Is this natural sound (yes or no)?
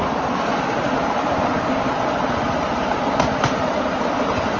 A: yes